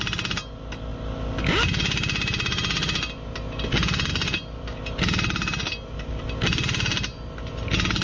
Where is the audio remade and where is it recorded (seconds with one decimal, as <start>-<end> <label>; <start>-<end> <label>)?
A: 0.0-8.0 recorded